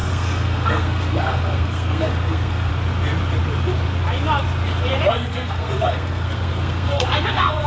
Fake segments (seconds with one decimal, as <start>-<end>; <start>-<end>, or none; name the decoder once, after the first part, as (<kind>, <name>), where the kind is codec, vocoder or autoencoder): 0.0-2.7 (codec, SNAC); 5.1-7.7